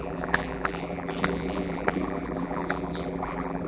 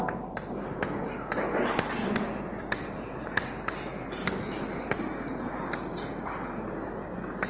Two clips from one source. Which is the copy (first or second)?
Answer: first